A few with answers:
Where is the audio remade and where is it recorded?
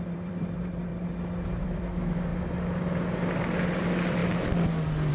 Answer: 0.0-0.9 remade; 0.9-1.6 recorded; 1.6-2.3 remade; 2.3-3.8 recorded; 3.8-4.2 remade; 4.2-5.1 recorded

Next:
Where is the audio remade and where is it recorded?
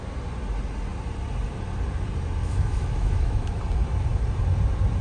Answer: 0.0-2.4 recorded; 2.4-3.6 remade; 3.6-5.0 recorded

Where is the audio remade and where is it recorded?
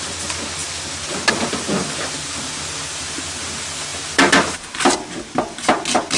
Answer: 0.0-6.2 recorded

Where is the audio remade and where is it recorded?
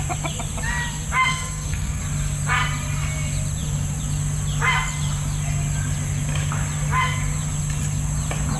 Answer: 0.0-1.3 recorded; 1.3-2.0 remade; 2.0-8.6 recorded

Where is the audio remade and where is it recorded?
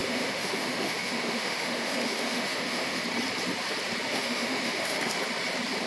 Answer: 0.0-3.0 remade; 3.0-4.1 recorded; 4.1-5.2 remade; 5.2-5.9 recorded